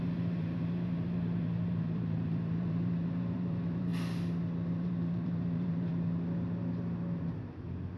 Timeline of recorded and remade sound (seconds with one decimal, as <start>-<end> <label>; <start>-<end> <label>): 0.0-3.9 remade; 3.9-4.7 recorded; 4.7-5.9 remade; 5.9-8.0 recorded